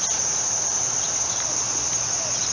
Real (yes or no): yes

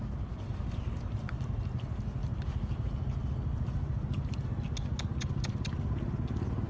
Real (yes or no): yes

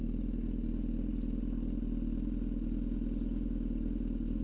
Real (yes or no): yes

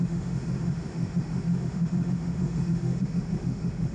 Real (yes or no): no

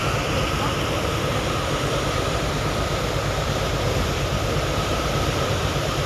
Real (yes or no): no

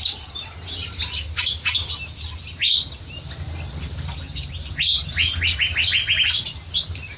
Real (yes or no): yes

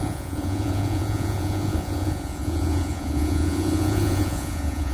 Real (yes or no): no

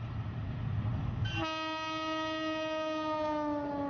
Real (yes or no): yes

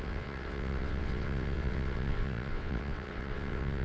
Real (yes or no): no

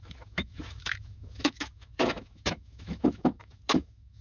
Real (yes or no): no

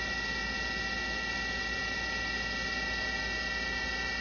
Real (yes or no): yes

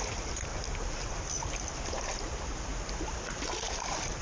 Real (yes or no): yes